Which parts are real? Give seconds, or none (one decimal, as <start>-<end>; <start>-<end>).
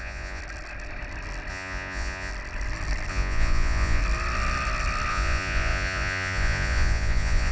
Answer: 0.4-1.5; 2.3-3.1; 4.0-5.1